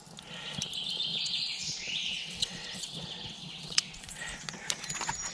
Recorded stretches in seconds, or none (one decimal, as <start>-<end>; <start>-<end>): 0.0-1.1; 4.2-5.3